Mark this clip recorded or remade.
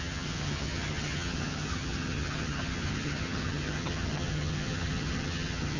remade